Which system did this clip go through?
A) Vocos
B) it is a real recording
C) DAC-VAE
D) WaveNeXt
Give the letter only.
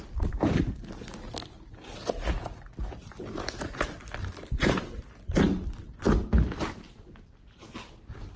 B